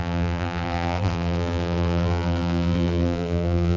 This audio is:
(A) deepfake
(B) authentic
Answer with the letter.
A